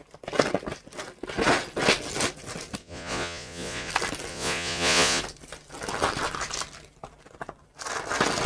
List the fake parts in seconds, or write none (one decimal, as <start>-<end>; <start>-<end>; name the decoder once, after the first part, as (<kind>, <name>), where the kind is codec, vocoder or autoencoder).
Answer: 2.8-3.9 (vocoder, Vocos); 4.3-5.2